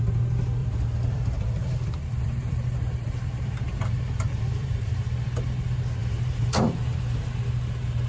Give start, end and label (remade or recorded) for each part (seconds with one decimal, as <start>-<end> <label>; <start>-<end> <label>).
0.0-0.6 recorded; 0.6-4.9 remade; 4.9-6.0 recorded; 6.0-6.6 remade; 6.6-8.1 recorded